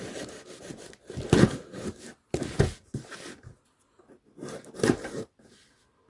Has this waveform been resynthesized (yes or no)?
no